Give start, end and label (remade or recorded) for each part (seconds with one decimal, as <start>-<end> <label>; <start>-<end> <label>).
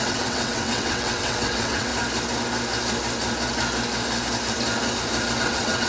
0.0-1.9 remade; 1.9-5.4 recorded; 5.4-5.9 remade